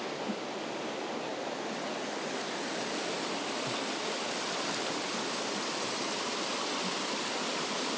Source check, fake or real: real